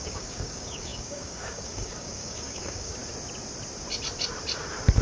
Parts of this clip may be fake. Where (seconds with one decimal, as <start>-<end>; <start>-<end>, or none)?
0.0-3.0